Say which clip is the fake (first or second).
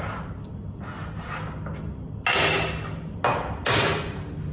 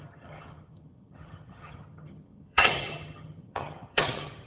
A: second